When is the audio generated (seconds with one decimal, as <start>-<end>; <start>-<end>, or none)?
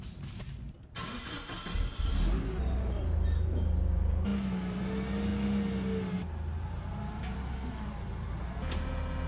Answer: none